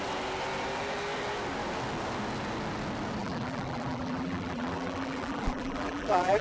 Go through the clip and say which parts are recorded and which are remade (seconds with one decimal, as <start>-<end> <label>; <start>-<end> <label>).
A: 0.0-3.2 recorded; 3.2-6.4 remade